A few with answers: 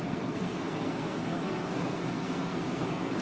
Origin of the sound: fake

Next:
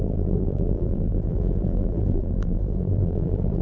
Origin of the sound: fake